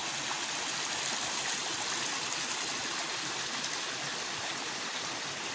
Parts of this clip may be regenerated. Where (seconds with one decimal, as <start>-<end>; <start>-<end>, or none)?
none